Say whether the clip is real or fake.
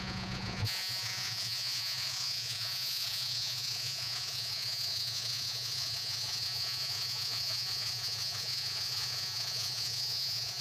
fake